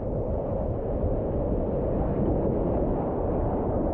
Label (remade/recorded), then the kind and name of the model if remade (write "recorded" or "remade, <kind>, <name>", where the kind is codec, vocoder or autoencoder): recorded